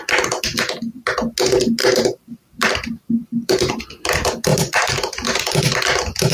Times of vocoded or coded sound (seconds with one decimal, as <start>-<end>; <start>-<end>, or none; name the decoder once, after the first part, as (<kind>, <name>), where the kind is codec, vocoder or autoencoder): 1.8-3.8 (vocoder, BigVGAN v2); 4.5-5.4